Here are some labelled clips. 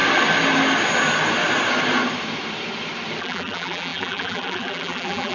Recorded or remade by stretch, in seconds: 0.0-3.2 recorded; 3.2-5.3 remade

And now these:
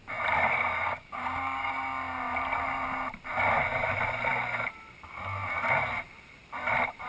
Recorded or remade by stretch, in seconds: 0.0-0.7 recorded; 0.7-1.7 remade; 1.7-7.1 recorded

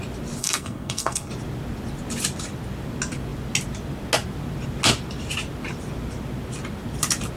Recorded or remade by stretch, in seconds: 0.0-0.4 recorded; 0.4-1.3 remade; 1.3-7.4 recorded

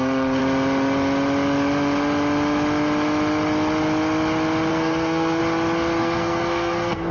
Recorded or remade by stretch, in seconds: 0.0-0.4 remade; 0.4-4.7 recorded; 4.7-5.4 remade; 5.4-6.0 recorded; 6.0-7.1 remade

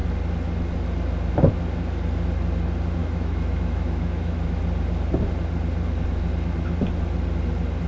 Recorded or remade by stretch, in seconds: 0.0-3.0 recorded; 3.0-4.6 remade; 4.6-7.9 recorded

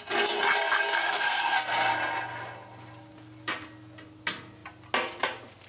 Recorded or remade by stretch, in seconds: 0.0-1.0 recorded; 1.0-1.9 remade; 1.9-5.7 recorded